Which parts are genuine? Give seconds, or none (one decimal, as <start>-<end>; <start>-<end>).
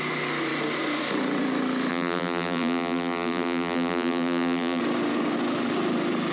0.0-1.9; 4.8-6.3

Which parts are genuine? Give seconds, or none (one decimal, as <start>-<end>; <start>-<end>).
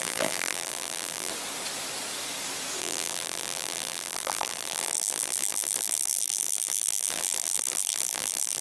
1.3-2.8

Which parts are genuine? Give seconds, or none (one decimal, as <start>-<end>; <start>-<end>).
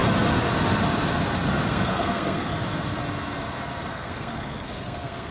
0.0-1.7; 2.5-3.9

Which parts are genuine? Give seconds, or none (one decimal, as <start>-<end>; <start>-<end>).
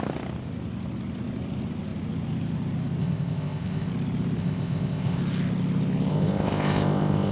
0.0-3.0; 3.9-4.4; 5.2-6.1